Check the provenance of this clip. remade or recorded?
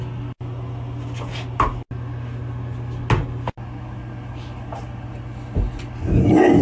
recorded